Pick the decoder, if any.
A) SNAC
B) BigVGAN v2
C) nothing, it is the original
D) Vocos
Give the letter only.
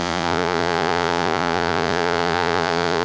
D